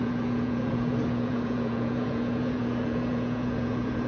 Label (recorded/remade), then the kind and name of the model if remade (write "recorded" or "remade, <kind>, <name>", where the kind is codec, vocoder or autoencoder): remade, vocoder, Vocos